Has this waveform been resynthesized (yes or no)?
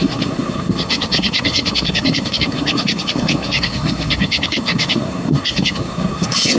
yes